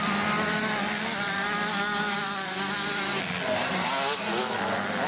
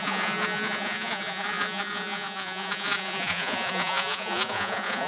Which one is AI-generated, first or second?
second